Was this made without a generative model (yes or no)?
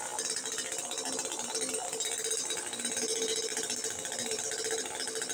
yes